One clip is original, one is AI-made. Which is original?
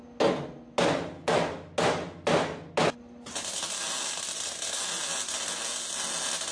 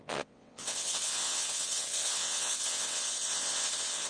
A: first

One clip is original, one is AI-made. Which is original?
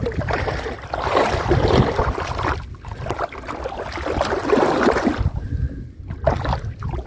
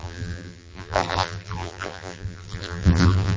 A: first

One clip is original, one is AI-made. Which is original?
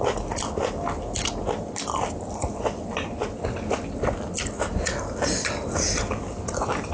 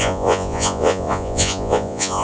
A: first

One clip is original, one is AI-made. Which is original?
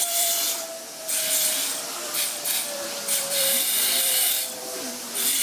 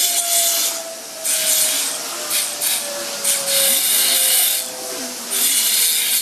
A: second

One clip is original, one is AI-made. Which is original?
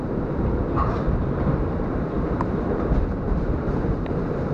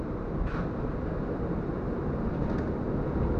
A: second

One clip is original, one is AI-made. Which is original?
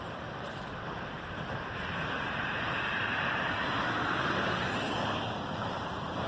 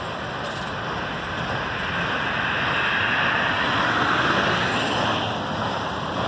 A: second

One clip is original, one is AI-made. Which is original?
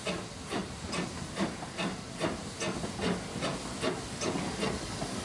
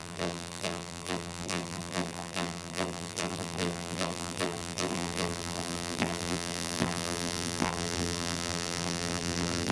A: first